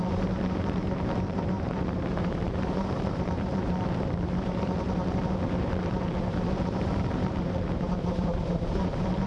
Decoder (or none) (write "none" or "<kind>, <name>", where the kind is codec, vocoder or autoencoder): vocoder, BigVGAN v2